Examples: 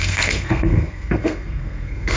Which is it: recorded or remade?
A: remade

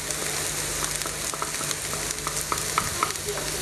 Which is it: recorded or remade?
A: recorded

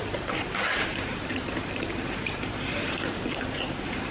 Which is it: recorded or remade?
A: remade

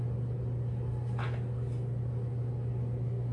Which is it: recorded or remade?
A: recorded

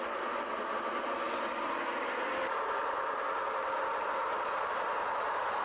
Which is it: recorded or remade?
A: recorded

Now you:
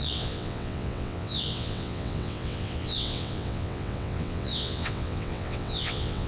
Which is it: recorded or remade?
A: remade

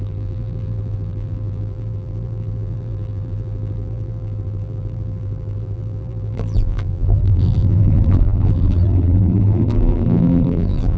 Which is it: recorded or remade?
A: remade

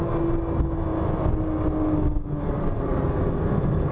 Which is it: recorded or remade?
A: recorded